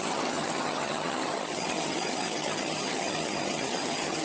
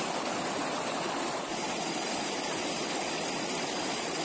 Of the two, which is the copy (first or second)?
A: first